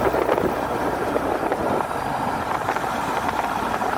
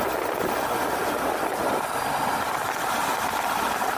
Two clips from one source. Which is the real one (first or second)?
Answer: second